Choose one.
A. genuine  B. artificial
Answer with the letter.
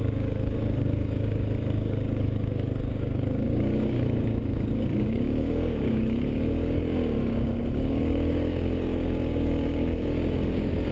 B